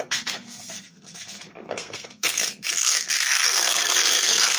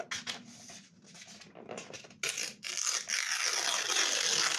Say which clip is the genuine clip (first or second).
second